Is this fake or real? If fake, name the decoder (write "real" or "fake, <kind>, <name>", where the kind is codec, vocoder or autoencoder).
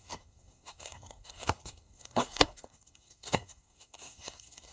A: fake, codec, SNAC